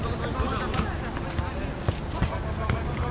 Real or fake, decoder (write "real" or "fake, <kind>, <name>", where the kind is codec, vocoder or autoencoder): real